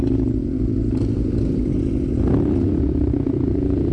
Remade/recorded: recorded